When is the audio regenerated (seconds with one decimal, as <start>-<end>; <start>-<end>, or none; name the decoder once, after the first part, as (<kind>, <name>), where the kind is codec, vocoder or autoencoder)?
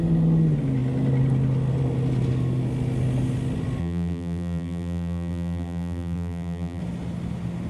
3.8-6.8 (vocoder, BigVGAN v2)